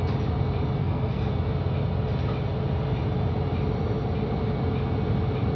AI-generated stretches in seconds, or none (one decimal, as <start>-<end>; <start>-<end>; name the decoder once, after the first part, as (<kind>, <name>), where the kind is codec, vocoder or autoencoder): 0.8-1.3 (codec, SNAC)